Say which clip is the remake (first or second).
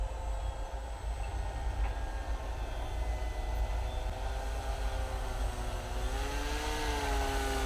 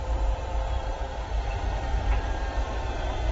second